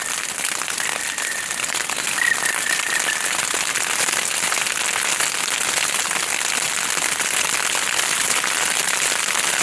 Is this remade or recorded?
recorded